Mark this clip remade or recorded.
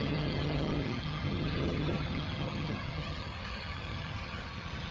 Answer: remade